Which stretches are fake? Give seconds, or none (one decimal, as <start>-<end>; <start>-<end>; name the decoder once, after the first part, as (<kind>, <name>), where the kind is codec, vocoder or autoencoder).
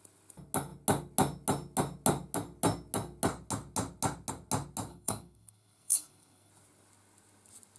4.9-6.5 (codec, SNAC)